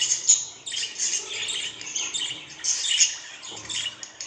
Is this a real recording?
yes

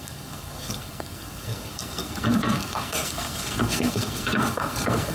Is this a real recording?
no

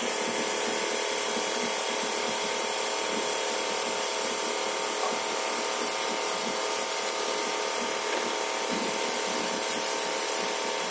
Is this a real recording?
yes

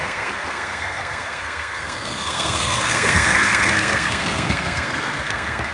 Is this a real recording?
no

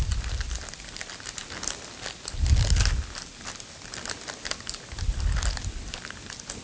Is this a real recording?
yes